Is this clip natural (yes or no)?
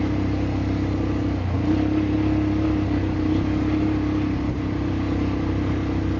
yes